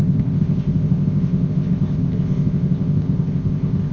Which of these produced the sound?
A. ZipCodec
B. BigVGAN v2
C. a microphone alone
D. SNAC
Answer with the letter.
A